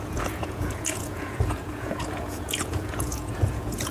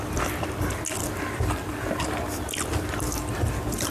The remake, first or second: first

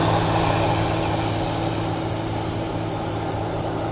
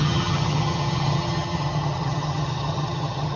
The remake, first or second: second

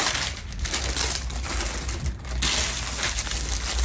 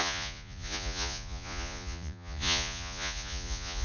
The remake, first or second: second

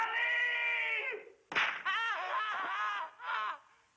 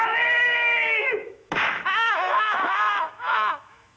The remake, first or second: second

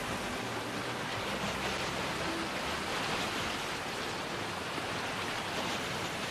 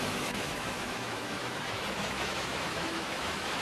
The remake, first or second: second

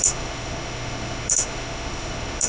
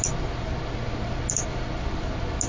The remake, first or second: first